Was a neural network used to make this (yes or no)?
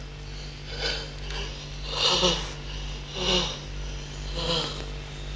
no